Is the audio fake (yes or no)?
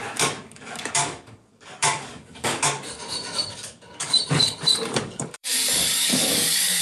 yes